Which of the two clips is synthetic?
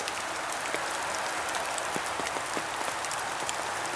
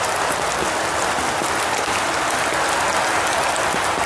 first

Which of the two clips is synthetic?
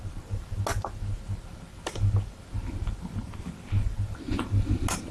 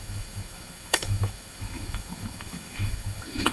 second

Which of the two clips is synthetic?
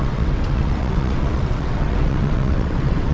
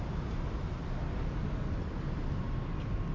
first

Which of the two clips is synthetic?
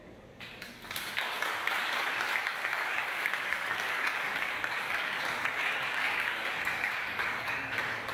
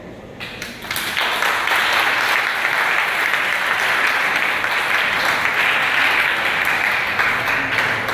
first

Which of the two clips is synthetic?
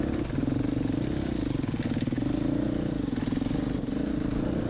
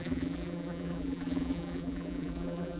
second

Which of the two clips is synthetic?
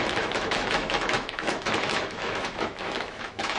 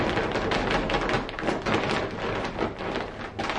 first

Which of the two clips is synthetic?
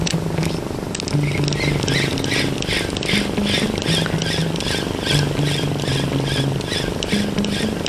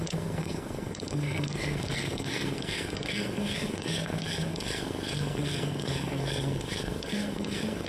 second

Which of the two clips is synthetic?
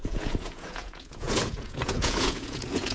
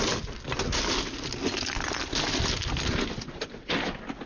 first